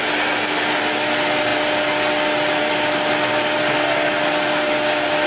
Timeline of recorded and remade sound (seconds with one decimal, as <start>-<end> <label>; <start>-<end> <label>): 0.0-5.3 recorded